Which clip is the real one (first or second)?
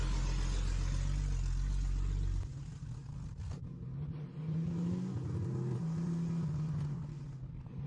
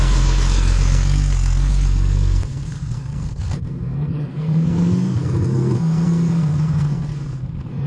first